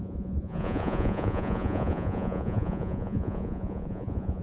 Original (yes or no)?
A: no